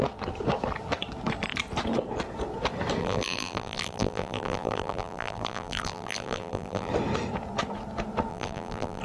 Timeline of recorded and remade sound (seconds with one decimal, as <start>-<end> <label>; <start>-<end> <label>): 0.0-3.0 recorded; 3.0-6.9 remade; 6.9-8.3 recorded; 8.3-9.0 remade